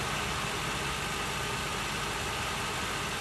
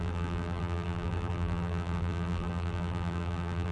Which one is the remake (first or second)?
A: second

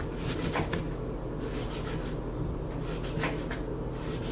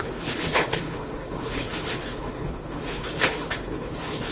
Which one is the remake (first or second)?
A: second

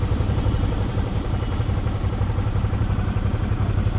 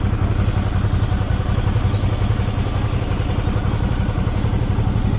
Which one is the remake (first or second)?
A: first